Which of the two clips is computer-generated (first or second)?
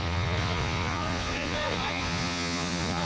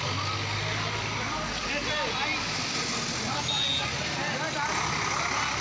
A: first